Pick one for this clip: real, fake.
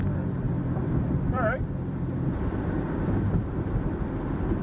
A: fake